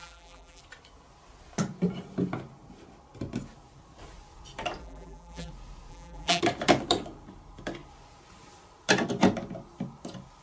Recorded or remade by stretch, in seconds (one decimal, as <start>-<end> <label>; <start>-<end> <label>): 0.0-0.6 remade; 0.6-4.8 recorded; 4.8-5.5 remade; 5.5-5.9 recorded; 5.9-6.4 remade; 6.4-10.4 recorded